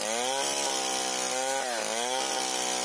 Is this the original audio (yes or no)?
yes